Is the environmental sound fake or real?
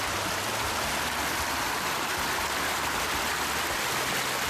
real